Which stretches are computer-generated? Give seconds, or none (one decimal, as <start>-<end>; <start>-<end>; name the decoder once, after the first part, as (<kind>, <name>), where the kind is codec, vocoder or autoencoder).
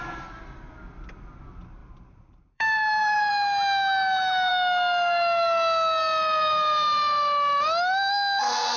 1.8-3.3 (vocoder, BigVGAN v2)